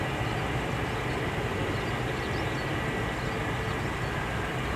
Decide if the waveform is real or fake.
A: real